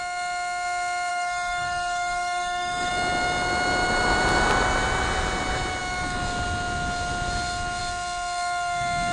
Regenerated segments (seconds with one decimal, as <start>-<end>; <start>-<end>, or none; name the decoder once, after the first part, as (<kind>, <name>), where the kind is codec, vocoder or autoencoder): 1.1-2.9 (codec, DAC)